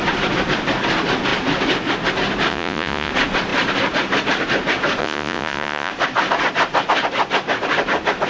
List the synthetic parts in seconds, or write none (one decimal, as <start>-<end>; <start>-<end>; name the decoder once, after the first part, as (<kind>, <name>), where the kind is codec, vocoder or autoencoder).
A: 2.5-3.1 (vocoder, Vocos); 5.0-5.9